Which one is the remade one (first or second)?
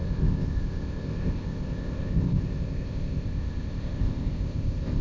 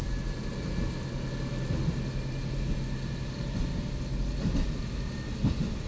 first